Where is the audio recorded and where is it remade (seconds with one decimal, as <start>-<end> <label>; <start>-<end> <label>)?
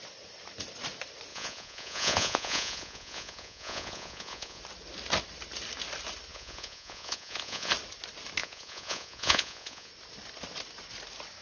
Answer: 0.0-1.3 recorded; 1.3-4.6 remade; 4.6-6.3 recorded; 6.3-7.7 remade; 7.7-8.4 recorded; 8.4-9.9 remade; 9.9-11.4 recorded